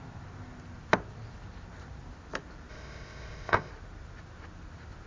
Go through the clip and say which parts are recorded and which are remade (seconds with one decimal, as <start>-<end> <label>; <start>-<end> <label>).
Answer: 0.0-2.7 recorded; 2.7-3.7 remade; 3.7-5.1 recorded